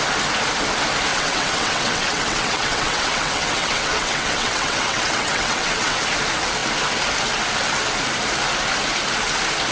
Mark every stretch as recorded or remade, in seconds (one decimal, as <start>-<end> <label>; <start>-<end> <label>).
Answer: 0.0-1.1 recorded; 1.1-6.0 remade; 6.0-9.7 recorded